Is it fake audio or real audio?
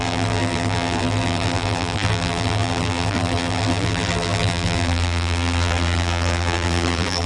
fake